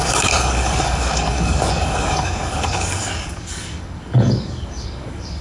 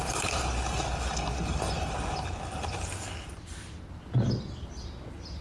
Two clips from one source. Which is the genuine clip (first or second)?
second